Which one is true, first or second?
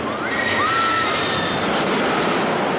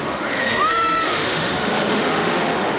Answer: first